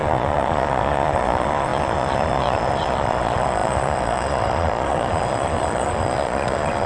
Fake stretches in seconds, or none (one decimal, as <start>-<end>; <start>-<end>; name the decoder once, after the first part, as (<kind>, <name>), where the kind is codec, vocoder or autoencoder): 0.0-6.9 (vocoder, Vocos)